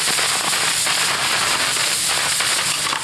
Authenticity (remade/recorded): remade